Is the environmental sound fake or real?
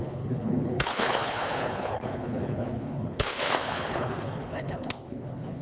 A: fake